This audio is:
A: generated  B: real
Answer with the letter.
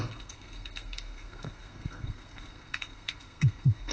A